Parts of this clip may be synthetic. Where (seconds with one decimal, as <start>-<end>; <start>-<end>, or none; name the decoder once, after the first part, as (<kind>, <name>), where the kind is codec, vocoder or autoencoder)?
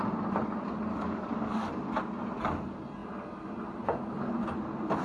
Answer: 0.9-1.7 (codec, DAC)